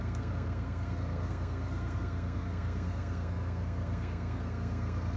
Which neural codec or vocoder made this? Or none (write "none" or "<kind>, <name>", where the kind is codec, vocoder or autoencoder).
codec, SNAC